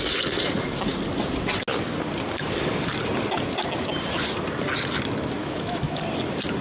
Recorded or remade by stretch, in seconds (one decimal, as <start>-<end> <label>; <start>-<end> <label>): 0.0-5.4 recorded; 5.4-6.0 remade; 6.0-6.6 recorded